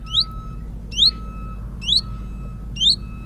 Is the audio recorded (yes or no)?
yes